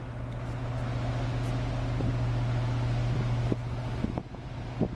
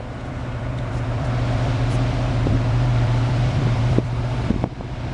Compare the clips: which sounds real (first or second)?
first